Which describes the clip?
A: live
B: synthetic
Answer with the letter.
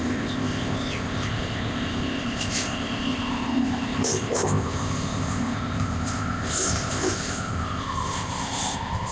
B